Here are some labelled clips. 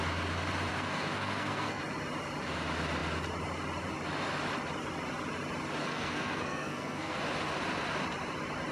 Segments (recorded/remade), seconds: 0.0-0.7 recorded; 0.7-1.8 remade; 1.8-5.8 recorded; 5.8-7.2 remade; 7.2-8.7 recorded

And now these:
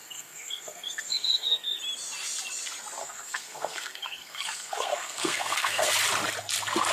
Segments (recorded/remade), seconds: 0.0-1.8 remade; 1.8-3.0 recorded; 3.0-5.9 remade; 5.9-6.9 recorded

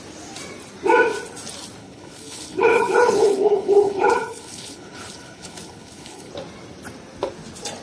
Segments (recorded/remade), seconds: 0.0-1.8 recorded; 1.8-6.3 remade; 6.3-7.8 recorded

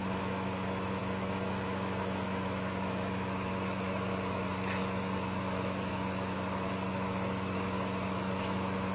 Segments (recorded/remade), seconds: 0.0-8.9 remade

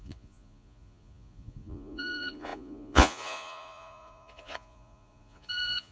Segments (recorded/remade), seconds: 0.0-5.9 remade